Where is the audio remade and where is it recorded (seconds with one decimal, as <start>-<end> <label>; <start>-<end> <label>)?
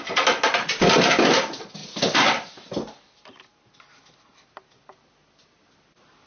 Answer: 0.0-6.3 recorded